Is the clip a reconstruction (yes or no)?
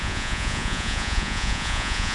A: yes